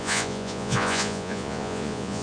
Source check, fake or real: fake